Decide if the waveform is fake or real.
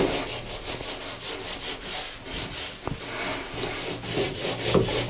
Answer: real